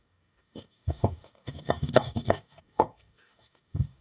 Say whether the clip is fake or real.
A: fake